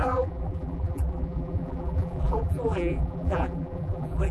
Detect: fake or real fake